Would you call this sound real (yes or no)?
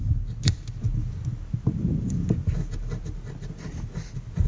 yes